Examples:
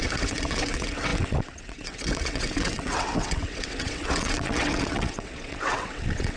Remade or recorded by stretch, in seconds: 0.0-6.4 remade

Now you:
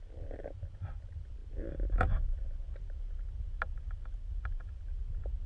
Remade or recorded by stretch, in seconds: 0.0-5.5 recorded

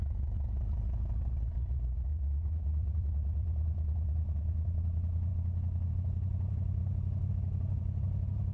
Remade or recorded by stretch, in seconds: 0.0-5.3 remade; 5.3-5.9 recorded; 5.9-6.8 remade; 6.8-7.3 recorded; 7.3-8.5 remade

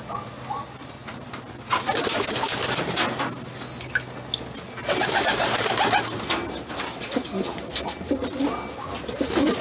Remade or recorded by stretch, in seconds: 0.0-9.6 recorded

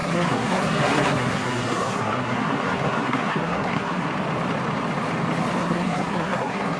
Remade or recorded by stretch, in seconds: 0.0-4.1 remade; 4.1-5.6 recorded; 5.6-6.8 remade

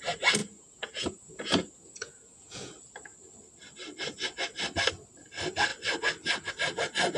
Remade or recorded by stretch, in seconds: 0.0-0.4 recorded; 0.4-2.7 remade; 2.7-7.2 recorded

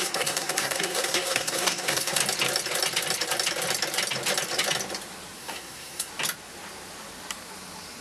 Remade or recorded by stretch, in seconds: 0.0-2.2 remade; 2.2-5.4 recorded; 5.4-6.1 remade; 6.1-8.0 recorded